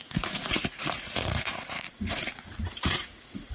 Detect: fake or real fake